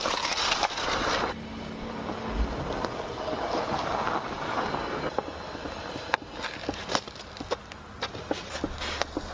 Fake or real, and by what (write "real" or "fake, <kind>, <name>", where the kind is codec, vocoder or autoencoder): real